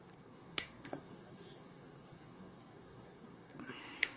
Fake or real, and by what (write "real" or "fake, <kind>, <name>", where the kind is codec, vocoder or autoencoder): fake, codec, SNAC